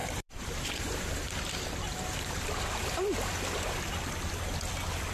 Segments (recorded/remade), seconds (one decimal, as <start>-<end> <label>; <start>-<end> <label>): 0.0-1.5 remade; 1.5-5.1 recorded